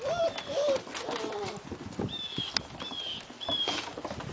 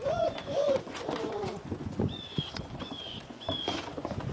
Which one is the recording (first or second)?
first